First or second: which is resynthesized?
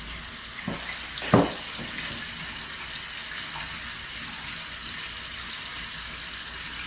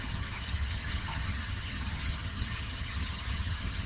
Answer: second